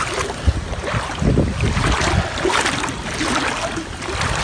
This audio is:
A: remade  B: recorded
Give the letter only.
B